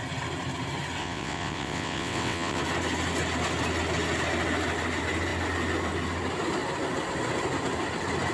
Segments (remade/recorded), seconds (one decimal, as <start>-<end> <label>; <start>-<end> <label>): 0.0-1.0 recorded; 1.0-2.6 remade; 2.6-8.3 recorded